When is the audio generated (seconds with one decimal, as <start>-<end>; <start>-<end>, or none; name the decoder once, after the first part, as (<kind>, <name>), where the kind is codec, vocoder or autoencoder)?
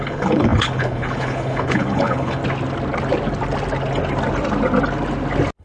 0.0-2.4 (codec, HILCodec)